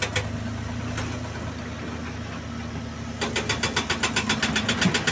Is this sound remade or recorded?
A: recorded